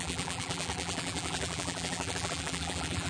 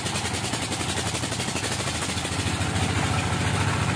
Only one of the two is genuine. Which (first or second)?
second